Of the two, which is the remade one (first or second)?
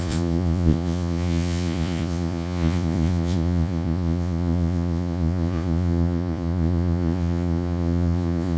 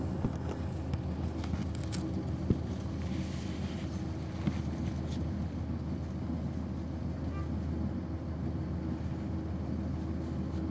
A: first